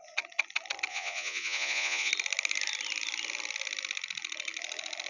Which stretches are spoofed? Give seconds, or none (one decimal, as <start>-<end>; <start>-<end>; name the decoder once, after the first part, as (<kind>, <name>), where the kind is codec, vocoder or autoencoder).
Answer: 0.9-2.1 (vocoder, Vocos)